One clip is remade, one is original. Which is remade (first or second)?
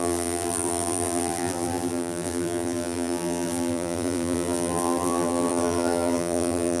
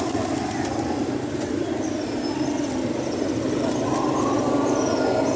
first